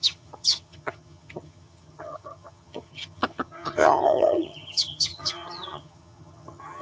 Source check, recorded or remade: remade